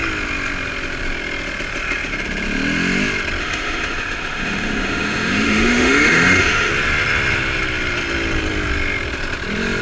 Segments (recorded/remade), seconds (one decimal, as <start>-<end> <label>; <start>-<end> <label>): 0.0-3.4 recorded; 3.4-6.7 remade; 6.7-9.8 recorded